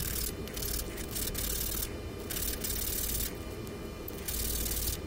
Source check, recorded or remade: recorded